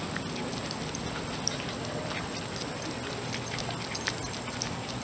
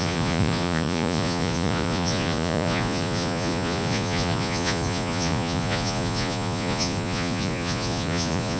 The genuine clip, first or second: first